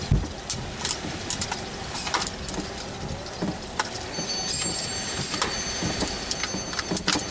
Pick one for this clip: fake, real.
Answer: fake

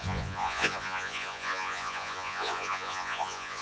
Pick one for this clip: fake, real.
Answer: fake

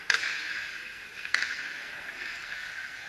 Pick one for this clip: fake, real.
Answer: fake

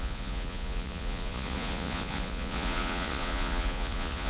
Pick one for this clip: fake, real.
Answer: fake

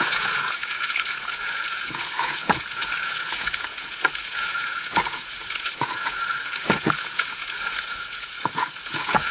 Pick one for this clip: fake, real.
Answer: fake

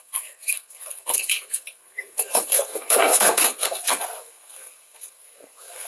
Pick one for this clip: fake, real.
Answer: fake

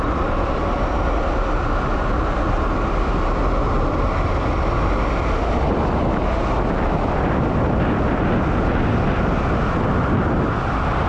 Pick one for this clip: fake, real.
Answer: real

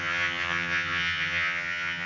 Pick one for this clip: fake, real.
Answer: fake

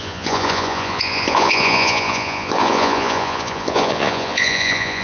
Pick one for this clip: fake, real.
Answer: fake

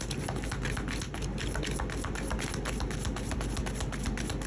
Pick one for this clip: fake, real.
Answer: real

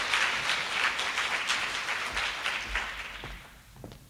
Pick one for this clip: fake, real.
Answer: real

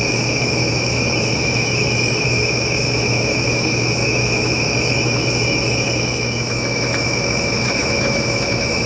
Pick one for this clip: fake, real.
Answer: fake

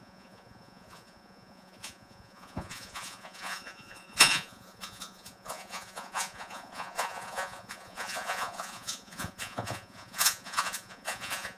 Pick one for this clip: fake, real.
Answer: fake